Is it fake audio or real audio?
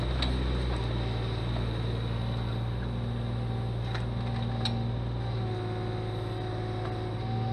real